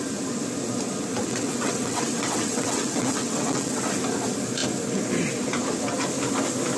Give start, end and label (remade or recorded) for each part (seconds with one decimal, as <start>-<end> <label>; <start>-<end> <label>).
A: 0.0-1.3 recorded; 1.3-3.9 remade; 3.9-6.8 recorded